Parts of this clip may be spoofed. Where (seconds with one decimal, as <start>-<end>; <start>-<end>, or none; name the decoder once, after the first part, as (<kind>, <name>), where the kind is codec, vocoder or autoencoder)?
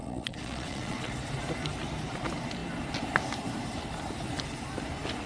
0.0-1.1 (vocoder, Vocos)